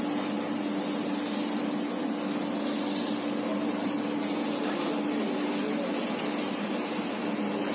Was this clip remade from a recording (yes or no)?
no